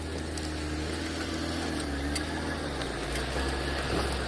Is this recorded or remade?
recorded